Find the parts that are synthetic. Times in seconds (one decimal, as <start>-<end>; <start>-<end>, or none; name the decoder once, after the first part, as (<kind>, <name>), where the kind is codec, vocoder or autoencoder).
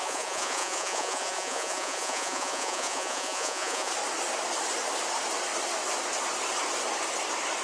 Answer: 0.0-3.9 (vocoder, Vocos)